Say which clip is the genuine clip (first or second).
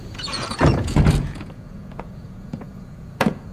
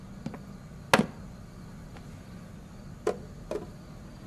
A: second